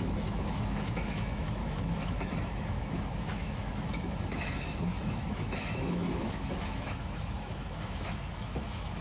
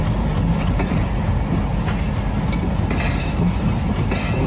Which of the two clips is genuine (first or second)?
second